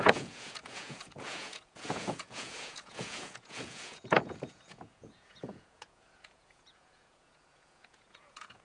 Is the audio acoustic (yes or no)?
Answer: no